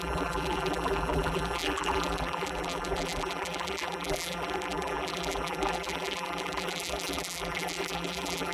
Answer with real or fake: fake